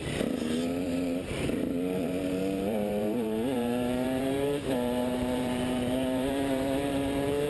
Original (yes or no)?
no